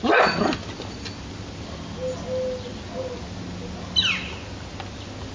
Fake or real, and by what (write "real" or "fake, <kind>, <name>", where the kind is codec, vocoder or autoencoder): real